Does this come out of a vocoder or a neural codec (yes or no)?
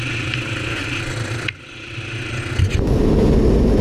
no